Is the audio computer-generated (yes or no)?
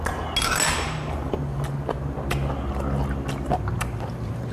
no